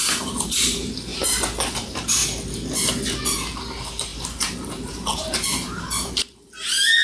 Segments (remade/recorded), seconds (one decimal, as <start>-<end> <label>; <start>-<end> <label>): 0.0-1.1 remade; 1.1-1.7 recorded; 1.7-2.2 remade; 2.2-3.5 recorded; 3.5-7.0 remade